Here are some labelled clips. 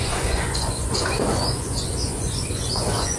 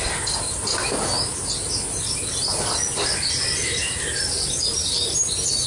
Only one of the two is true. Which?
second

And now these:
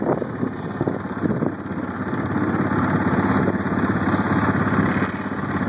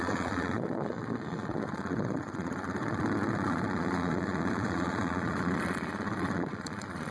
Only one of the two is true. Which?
first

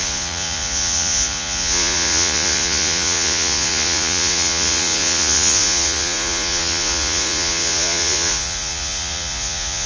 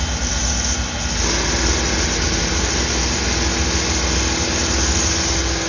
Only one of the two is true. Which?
second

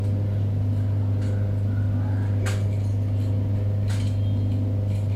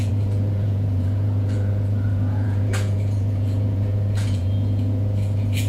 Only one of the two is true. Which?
first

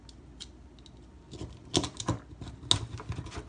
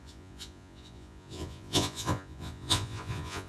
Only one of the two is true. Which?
first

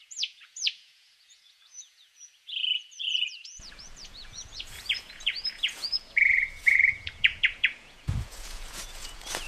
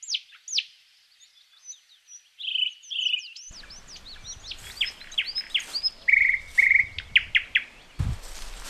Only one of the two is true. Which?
second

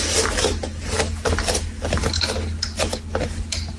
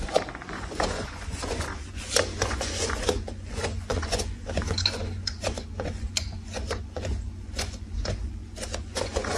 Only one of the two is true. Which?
first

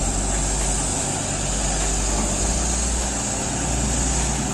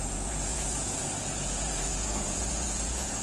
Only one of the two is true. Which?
first